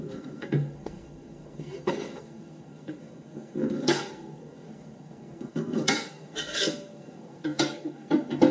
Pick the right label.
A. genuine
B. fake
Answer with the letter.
B